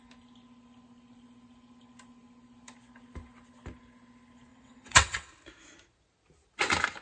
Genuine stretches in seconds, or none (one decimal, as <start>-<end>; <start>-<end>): 0.0-4.5; 5.3-7.0